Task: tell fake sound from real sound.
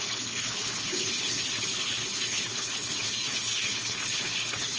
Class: fake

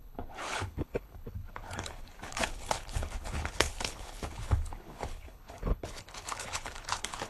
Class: fake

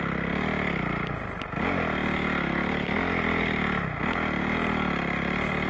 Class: real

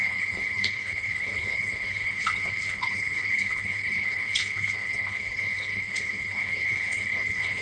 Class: fake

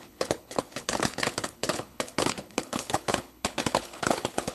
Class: fake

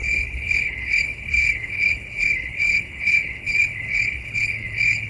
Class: fake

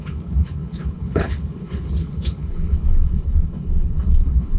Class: fake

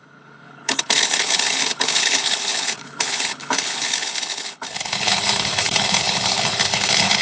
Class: fake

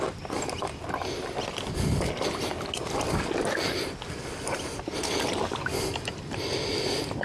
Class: real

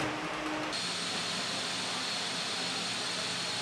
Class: real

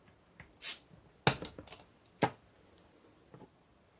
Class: real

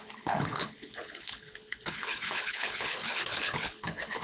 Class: fake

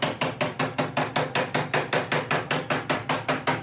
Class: real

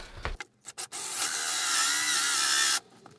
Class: real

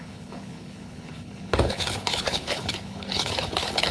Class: fake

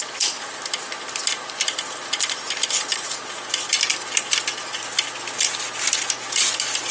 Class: real